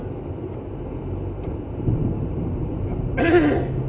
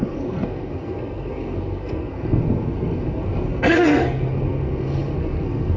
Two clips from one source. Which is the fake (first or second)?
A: second